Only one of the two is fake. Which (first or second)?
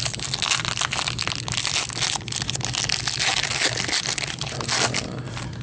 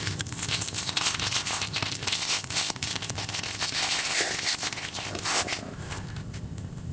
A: second